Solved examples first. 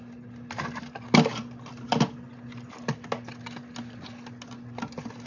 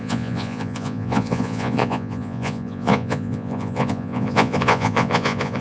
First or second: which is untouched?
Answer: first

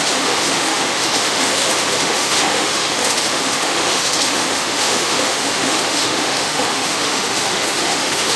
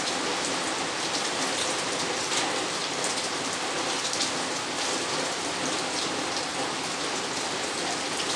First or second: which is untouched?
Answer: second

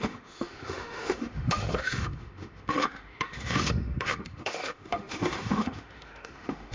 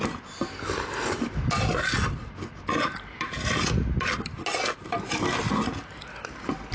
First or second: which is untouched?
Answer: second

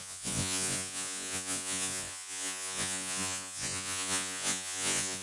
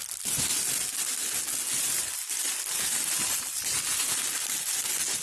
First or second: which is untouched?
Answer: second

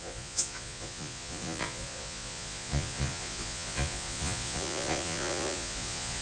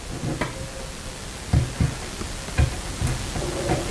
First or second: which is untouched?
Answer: second